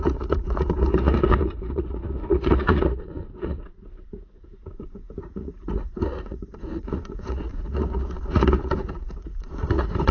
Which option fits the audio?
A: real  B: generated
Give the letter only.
B